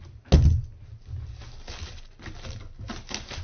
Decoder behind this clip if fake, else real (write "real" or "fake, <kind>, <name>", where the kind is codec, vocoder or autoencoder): real